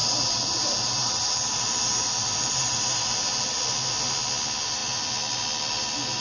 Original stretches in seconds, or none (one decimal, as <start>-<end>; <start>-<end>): 3.6-6.2